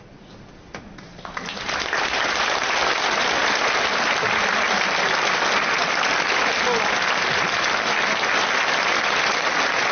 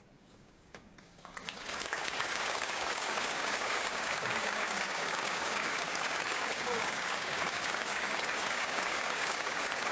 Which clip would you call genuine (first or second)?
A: first